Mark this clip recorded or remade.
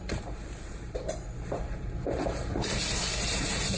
remade